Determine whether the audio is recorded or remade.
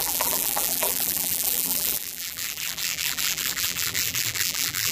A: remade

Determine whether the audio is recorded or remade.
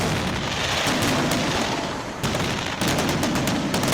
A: recorded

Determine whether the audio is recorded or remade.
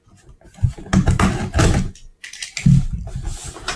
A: recorded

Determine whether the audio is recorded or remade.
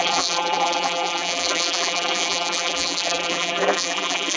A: remade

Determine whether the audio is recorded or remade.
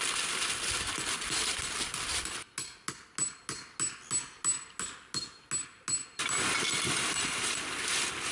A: recorded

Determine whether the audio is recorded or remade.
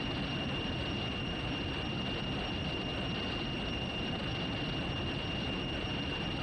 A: recorded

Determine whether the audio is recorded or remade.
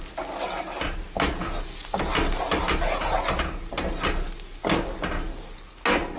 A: recorded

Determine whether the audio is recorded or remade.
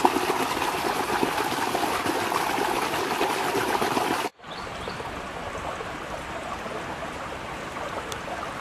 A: recorded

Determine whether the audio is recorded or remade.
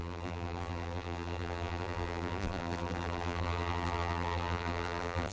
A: remade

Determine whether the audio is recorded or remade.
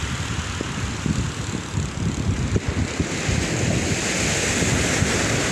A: recorded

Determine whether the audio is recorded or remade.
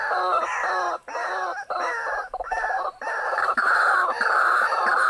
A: recorded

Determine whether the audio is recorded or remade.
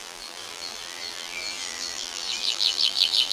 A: remade